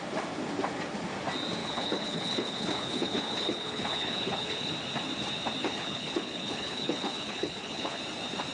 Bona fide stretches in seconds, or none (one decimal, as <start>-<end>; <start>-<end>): 0.0-1.6; 4.7-5.6; 8.0-8.5